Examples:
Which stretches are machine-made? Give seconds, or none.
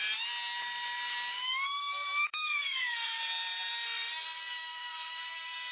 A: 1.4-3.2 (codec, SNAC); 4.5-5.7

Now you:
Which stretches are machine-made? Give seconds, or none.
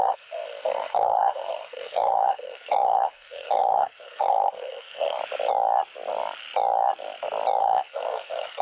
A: 0.0-5.2 (codec, SNAC); 7.6-8.6